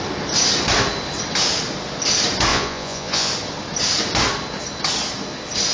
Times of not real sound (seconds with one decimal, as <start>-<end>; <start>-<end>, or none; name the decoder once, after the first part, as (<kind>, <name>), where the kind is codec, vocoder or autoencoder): 2.5-3.3 (vocoder, Vocos)